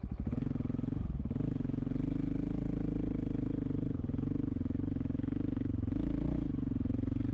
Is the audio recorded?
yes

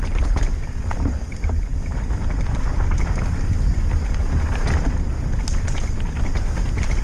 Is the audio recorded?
yes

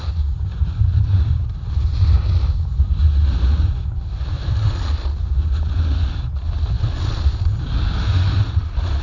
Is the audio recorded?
yes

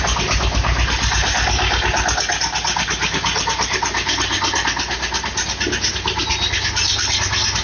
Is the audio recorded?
yes